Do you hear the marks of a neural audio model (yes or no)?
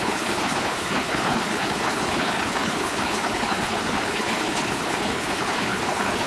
yes